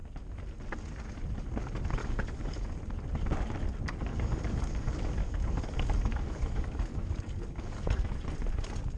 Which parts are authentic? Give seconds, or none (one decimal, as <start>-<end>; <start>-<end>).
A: 0.0-2.0; 2.8-4.1; 8.2-9.0

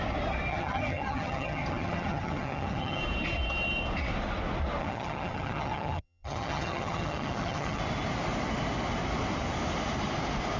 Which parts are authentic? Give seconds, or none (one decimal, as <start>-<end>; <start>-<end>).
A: 0.0-0.5; 3.0-4.8; 7.8-10.6

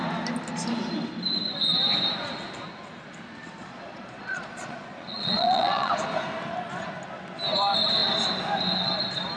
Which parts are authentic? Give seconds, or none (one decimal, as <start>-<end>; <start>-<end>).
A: 0.0-3.6; 5.9-9.4

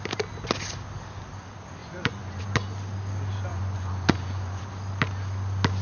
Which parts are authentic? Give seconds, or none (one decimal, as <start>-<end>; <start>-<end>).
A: 0.0-1.8; 2.4-3.5; 4.6-5.8